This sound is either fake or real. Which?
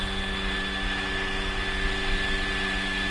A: real